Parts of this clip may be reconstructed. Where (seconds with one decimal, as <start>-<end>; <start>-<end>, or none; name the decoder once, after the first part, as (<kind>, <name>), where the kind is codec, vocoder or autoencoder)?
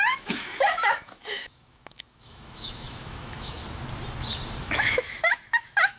0.0-3.6 (autoencoder, DAC-VAE); 4.6-6.0